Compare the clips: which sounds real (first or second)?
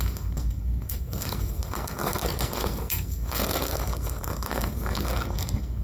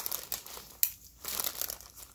second